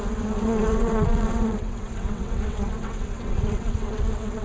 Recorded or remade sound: remade